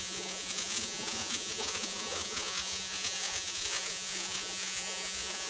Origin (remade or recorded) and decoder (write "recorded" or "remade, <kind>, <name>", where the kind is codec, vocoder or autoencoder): remade, vocoder, Vocos